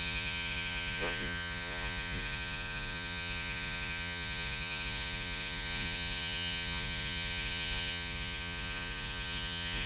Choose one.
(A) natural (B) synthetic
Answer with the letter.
B